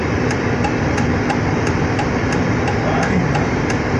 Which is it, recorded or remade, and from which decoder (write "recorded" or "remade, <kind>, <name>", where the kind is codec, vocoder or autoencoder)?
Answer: remade, vocoder, BigVGAN v2